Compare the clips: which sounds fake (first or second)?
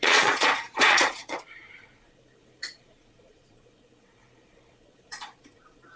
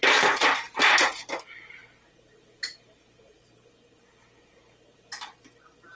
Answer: first